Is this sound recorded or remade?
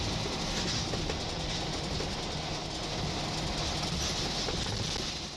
recorded